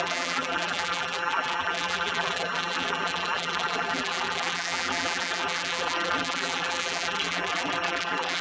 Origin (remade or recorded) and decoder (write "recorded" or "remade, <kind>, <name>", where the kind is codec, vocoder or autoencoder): remade, vocoder, BigVGAN v2